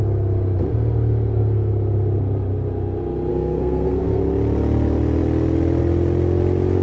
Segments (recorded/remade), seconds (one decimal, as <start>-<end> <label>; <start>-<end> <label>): 0.0-3.3 recorded; 3.3-4.2 remade; 4.2-6.8 recorded